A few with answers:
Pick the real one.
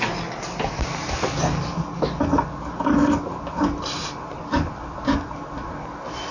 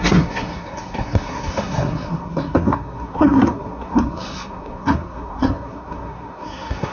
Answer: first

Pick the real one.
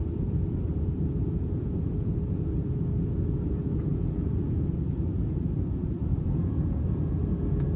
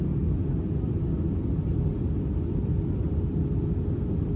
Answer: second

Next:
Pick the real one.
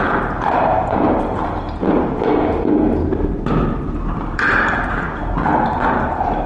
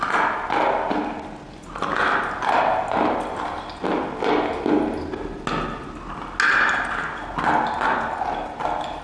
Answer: second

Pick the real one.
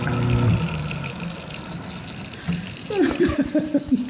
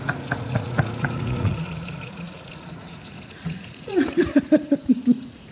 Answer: first